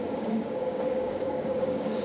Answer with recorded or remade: remade